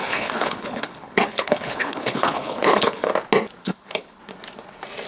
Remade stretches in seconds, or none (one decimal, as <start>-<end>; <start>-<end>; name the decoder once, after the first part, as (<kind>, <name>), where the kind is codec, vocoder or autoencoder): 0.0-3.1 (codec, HILCodec); 3.6-4.2